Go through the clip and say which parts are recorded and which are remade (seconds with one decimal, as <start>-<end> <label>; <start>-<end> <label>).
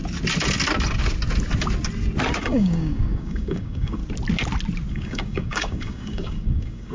0.0-2.4 recorded; 2.4-4.0 remade; 4.0-4.9 recorded; 4.9-6.9 remade